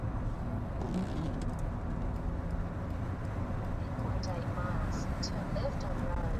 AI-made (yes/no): no